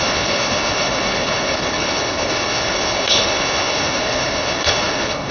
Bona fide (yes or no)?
no